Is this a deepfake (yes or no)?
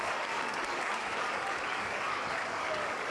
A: yes